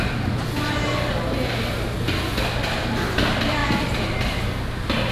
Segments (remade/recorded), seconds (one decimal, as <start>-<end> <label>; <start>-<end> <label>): 0.0-5.1 recorded

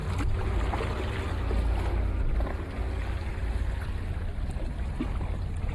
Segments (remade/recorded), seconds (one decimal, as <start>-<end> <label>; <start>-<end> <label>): 0.0-5.7 recorded